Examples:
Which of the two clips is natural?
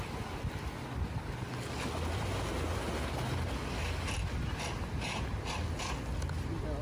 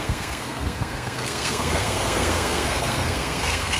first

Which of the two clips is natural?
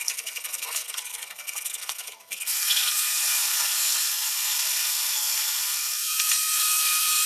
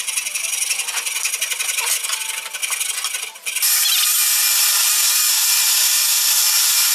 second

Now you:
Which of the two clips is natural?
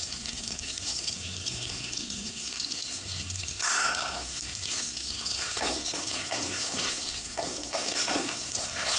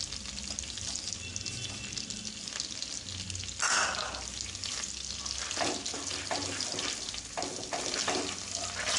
second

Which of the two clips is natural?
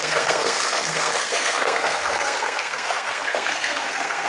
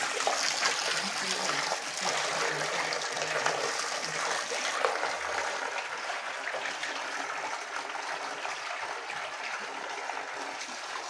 second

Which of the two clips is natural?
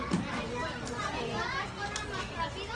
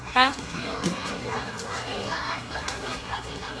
first